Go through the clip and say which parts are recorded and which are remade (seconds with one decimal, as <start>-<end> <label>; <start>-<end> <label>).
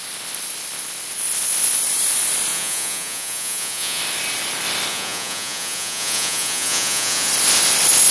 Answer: 0.0-2.5 recorded; 2.5-4.0 remade; 4.0-4.9 recorded; 4.9-7.3 remade; 7.3-8.1 recorded